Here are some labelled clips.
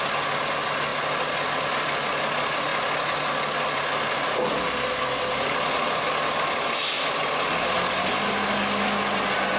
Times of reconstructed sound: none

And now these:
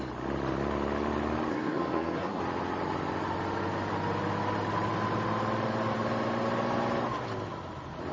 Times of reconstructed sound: 1.5-2.4 (codec, SNAC)